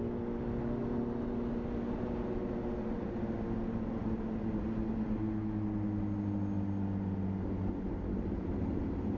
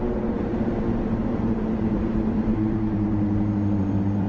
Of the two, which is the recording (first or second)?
first